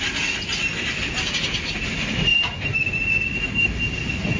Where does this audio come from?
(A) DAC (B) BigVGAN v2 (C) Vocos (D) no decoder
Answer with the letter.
D